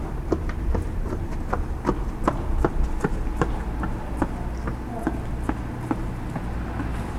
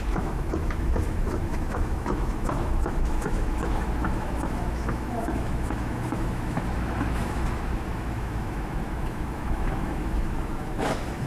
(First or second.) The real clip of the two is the first